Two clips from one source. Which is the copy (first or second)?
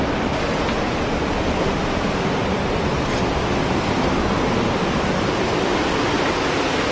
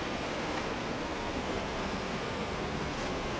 second